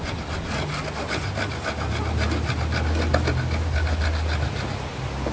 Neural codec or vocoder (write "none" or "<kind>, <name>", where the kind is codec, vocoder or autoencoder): none